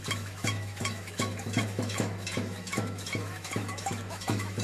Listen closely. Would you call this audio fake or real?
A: fake